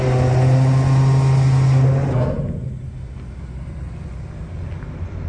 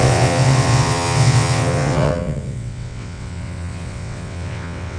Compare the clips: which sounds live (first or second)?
first